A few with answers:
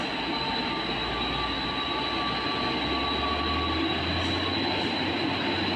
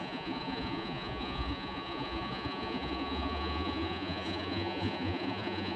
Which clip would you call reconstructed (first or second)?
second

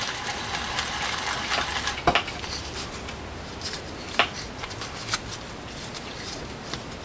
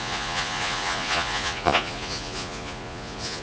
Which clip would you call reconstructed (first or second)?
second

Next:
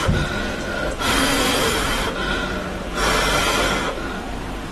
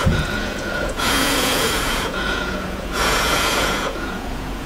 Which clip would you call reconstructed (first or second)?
second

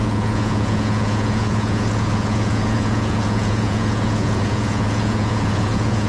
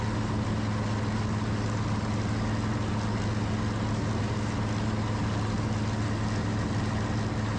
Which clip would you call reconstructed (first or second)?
first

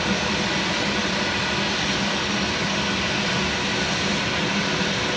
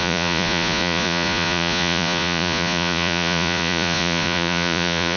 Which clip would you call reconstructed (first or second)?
second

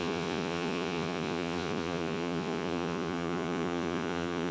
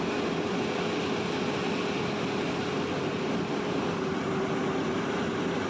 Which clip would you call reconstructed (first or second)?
first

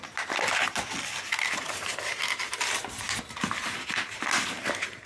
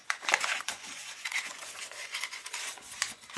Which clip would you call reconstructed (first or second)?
second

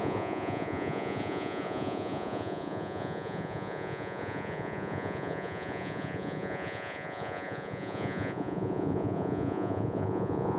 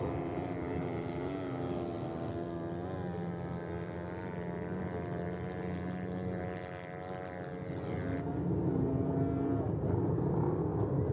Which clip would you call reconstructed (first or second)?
first